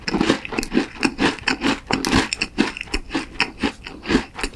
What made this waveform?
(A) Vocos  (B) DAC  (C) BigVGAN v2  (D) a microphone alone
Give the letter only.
D